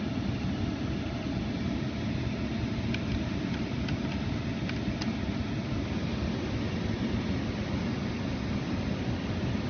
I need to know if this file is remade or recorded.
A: recorded